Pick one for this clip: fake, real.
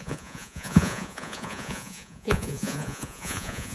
fake